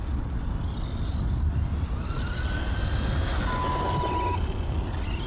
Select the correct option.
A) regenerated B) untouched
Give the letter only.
B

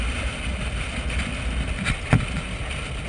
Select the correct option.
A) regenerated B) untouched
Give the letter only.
B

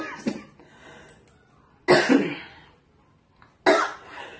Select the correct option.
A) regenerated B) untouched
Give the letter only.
B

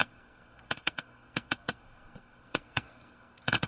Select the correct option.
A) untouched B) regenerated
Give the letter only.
B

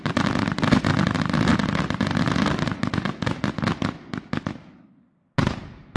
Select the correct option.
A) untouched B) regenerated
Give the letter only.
A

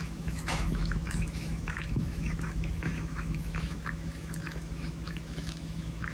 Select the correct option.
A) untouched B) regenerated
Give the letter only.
B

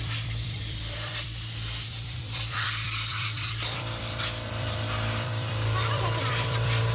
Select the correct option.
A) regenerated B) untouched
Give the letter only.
A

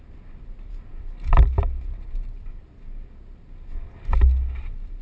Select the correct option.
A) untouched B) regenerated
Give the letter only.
A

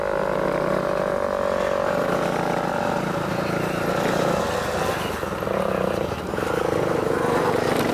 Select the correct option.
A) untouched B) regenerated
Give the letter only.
A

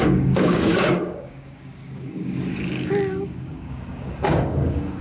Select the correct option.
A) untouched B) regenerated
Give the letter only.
B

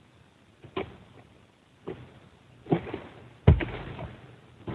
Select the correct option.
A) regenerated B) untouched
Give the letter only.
B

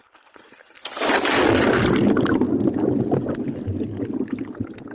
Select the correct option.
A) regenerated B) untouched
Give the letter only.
B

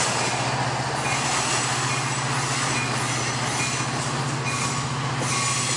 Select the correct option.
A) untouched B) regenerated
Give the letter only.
A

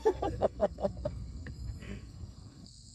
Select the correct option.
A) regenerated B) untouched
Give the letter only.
A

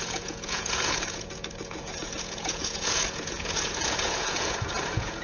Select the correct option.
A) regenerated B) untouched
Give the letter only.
A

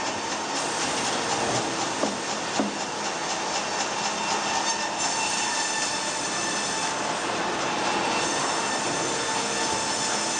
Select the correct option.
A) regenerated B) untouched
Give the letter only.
B